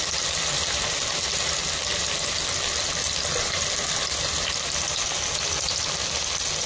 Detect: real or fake real